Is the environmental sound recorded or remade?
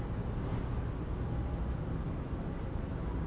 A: recorded